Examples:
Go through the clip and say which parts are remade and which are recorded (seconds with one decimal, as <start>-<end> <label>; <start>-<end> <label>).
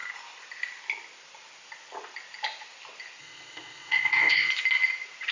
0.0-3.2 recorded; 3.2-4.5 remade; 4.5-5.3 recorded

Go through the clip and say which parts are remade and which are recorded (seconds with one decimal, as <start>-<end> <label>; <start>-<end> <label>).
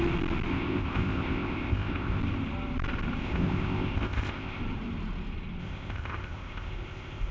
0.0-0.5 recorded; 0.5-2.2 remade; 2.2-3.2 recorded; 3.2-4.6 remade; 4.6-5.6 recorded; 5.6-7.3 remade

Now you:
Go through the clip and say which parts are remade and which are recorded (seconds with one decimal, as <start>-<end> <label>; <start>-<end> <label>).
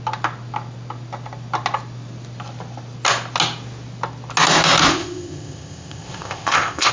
0.0-4.9 recorded; 4.9-6.9 remade